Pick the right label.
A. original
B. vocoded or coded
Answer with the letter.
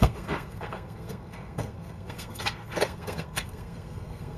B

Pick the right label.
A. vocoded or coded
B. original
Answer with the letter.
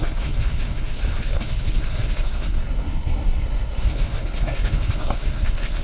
A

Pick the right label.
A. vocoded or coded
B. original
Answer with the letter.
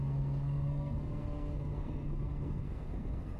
A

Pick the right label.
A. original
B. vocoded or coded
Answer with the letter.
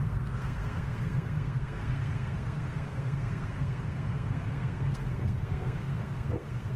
B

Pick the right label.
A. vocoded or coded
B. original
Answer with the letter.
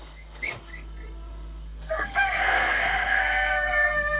A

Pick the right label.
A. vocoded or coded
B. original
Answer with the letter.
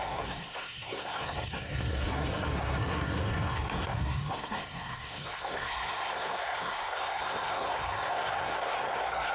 A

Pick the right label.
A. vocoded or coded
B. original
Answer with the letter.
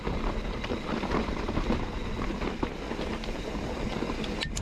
B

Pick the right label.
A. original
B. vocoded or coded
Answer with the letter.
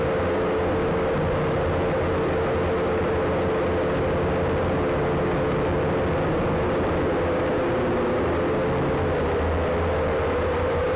A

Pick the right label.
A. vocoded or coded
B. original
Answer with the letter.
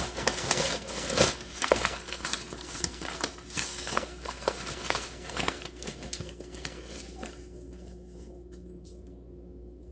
A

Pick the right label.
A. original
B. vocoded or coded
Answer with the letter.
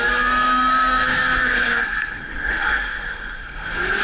B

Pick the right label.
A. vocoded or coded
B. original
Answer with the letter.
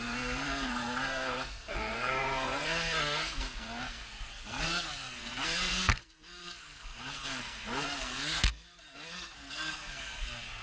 A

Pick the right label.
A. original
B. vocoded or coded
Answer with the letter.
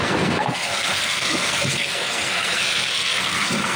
B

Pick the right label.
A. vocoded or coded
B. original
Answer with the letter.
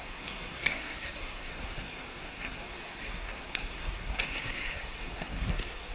A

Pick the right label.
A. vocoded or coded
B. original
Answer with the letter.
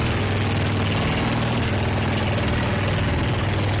B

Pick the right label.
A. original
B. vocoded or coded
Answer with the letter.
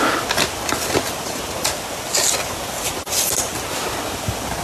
A